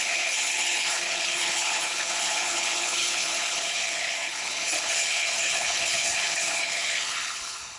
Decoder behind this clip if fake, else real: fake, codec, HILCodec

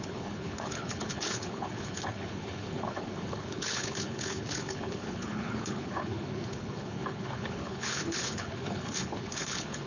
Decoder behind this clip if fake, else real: fake, codec, HILCodec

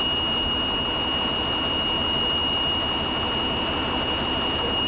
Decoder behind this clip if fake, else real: real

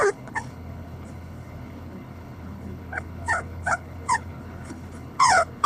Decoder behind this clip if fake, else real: fake, codec, HILCodec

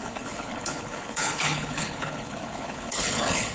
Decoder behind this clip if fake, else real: fake, codec, HILCodec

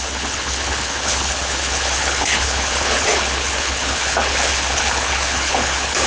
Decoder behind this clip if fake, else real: fake, codec, HILCodec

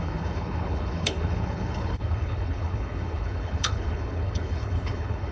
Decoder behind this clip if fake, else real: fake, codec, HILCodec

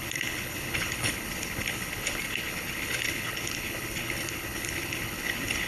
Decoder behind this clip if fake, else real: fake, codec, HILCodec